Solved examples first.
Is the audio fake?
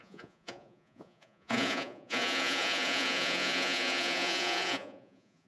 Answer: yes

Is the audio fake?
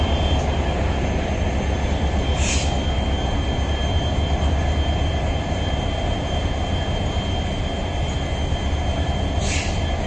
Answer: no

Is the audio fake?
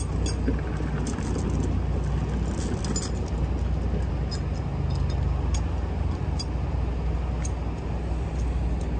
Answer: no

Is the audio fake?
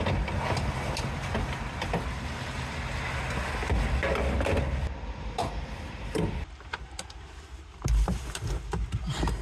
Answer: no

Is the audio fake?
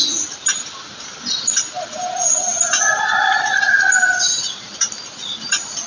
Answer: no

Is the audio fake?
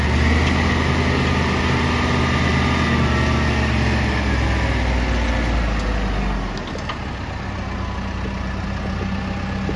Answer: no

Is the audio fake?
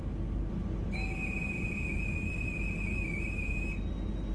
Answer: no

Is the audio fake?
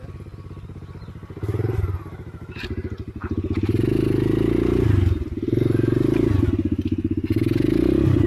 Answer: no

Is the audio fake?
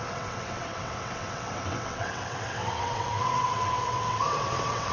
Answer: yes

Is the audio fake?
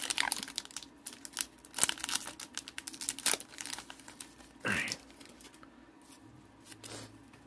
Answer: no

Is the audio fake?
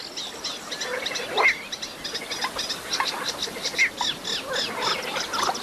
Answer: no